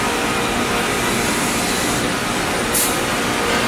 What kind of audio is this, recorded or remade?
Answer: recorded